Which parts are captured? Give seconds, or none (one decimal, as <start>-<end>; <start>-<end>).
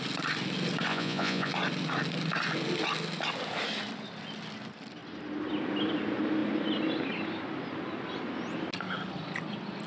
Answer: 0.0-0.9; 1.5-9.9